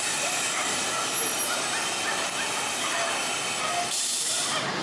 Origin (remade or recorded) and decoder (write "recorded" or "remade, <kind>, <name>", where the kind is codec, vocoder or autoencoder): recorded